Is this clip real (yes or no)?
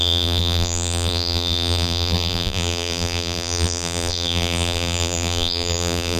no